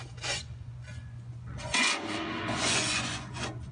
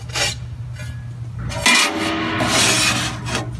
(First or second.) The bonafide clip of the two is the second